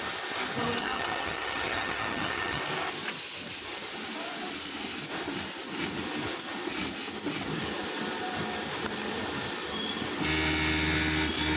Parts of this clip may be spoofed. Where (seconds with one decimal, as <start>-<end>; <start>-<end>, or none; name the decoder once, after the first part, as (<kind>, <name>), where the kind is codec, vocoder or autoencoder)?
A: 0.8-2.6 (vocoder, HiFi-GAN)